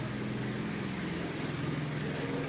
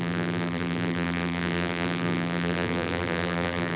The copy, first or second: second